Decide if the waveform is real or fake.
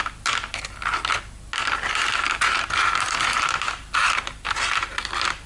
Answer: real